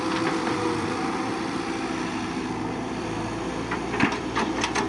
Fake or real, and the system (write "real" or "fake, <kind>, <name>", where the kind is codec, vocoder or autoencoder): fake, vocoder, BigVGAN v2